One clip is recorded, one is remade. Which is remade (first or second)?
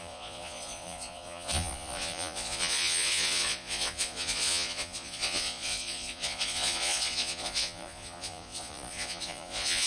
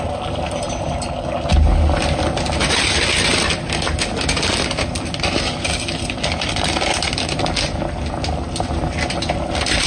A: first